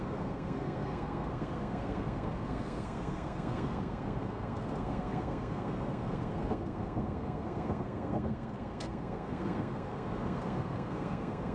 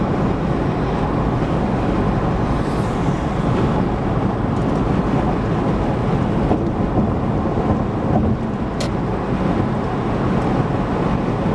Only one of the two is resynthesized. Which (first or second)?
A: first